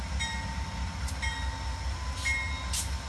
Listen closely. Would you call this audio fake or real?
real